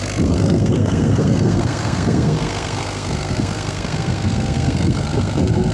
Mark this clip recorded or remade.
remade